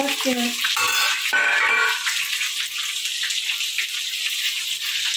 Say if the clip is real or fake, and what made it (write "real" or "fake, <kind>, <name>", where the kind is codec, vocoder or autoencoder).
real